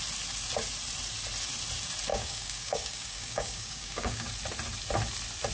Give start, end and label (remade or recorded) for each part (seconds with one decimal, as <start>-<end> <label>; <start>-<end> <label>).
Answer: 0.0-2.1 recorded; 2.1-4.3 remade; 4.3-5.5 recorded